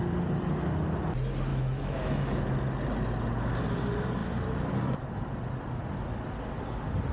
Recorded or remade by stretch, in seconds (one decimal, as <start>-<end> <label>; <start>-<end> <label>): 0.0-1.5 recorded; 1.5-2.4 remade; 2.4-7.1 recorded